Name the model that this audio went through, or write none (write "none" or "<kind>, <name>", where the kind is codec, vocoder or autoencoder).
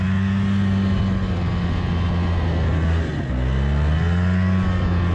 none